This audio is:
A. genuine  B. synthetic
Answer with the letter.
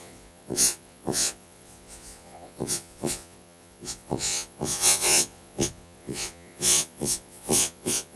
B